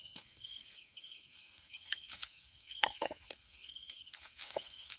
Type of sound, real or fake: fake